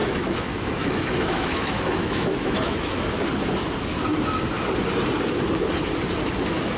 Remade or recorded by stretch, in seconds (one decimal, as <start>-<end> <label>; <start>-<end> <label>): 0.0-3.0 remade; 3.0-6.8 recorded